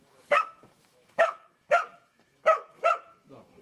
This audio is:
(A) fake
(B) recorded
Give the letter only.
A